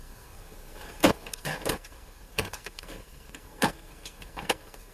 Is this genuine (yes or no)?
no